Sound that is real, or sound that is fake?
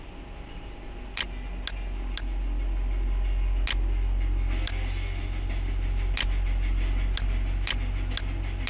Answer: real